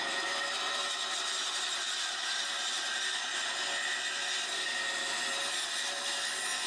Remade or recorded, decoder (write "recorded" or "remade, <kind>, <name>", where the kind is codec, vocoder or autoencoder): recorded